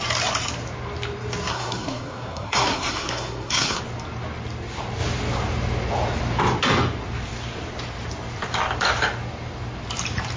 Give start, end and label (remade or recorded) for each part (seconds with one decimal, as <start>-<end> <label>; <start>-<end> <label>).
0.0-1.5 recorded; 1.5-3.8 remade; 3.8-10.4 recorded